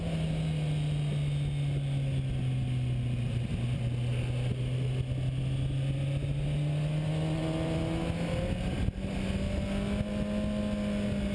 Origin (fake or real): real